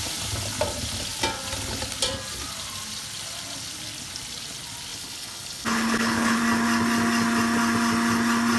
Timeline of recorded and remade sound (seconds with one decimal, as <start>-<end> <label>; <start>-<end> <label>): 0.0-4.9 recorded; 4.9-6.4 remade; 6.4-8.6 recorded